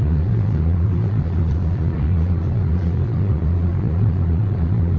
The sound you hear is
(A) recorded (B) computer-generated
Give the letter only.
B